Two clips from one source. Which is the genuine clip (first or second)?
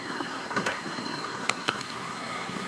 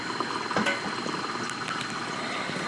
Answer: second